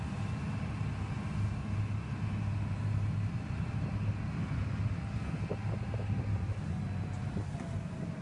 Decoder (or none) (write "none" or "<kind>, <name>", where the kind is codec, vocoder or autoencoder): none